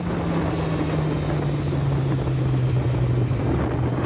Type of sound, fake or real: real